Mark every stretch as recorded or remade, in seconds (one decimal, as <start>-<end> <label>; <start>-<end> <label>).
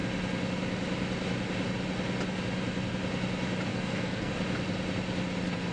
0.0-3.7 recorded; 3.7-4.3 remade; 4.3-5.7 recorded